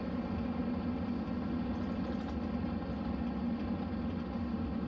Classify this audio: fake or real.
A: real